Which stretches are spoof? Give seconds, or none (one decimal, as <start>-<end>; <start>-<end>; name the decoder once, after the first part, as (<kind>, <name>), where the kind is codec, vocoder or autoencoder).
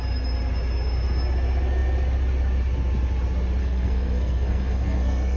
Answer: 3.6-5.4 (codec, SNAC)